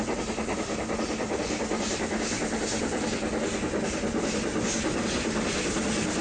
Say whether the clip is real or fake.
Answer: real